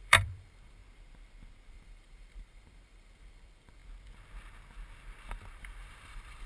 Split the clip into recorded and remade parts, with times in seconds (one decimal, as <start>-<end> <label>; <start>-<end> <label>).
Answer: 0.0-0.8 remade; 0.8-1.7 recorded; 1.7-3.8 remade; 3.8-5.5 recorded; 5.5-6.5 remade